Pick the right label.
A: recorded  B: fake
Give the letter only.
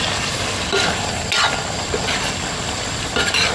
A